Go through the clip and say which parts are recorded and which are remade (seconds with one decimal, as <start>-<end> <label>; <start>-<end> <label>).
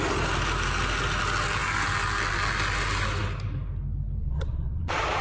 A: 0.0-4.2 recorded; 4.2-5.2 remade